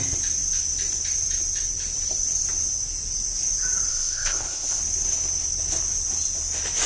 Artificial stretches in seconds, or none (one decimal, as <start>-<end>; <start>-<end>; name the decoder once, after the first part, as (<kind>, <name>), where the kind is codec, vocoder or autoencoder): 3.9-4.8 (codec, ZipCodec)